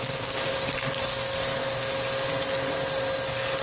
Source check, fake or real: real